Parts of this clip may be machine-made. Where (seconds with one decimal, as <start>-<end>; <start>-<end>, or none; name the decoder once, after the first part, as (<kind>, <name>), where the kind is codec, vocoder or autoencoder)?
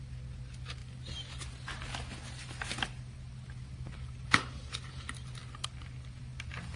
none